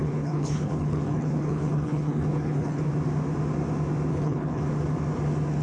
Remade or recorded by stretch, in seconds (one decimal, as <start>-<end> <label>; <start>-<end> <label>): 0.0-2.9 remade; 2.9-4.1 recorded; 4.1-4.6 remade; 4.6-5.6 recorded